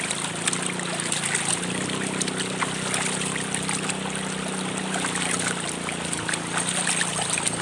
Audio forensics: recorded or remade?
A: recorded